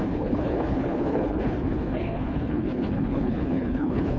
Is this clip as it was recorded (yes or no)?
no